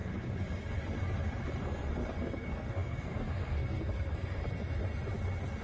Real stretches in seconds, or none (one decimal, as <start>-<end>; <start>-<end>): 0.0-1.6; 4.4-5.6